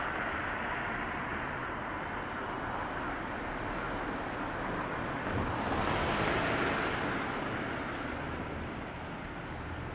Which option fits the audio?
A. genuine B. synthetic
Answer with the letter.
A